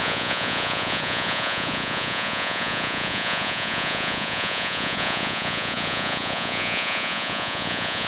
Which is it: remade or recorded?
remade